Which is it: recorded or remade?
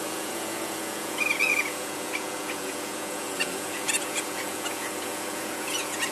remade